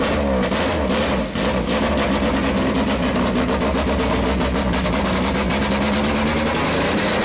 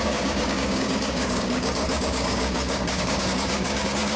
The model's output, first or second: second